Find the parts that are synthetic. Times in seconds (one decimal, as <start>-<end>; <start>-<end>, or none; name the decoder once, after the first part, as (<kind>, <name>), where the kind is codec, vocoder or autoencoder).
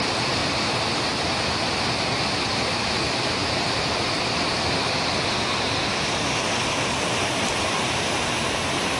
0.4-1.7 (vocoder, BigVGAN v2); 3.4-4.1